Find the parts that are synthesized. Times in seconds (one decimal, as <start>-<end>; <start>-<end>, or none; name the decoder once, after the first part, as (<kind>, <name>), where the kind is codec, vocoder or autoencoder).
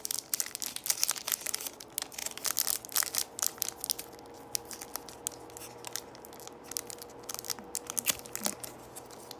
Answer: none